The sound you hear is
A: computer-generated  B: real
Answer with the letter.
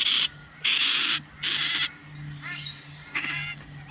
B